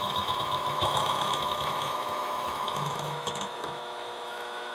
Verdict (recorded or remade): remade